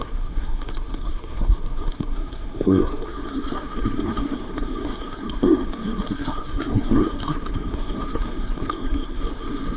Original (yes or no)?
no